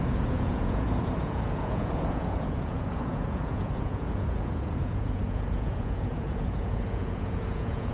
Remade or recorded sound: remade